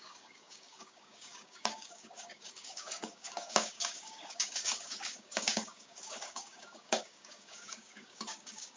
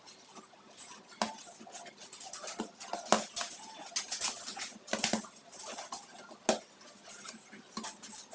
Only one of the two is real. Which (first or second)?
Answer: second